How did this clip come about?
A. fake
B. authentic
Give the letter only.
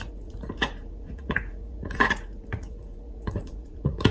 A